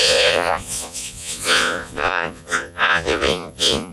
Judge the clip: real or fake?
fake